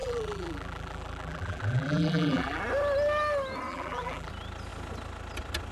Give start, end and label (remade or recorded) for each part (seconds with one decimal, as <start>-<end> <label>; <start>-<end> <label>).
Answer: 0.0-2.6 remade; 2.6-3.7 recorded; 3.7-4.3 remade; 4.3-5.7 recorded